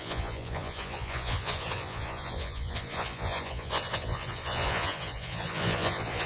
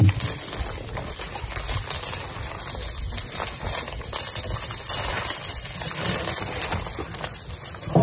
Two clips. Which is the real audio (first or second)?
second